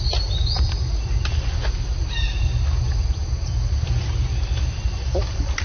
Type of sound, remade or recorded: recorded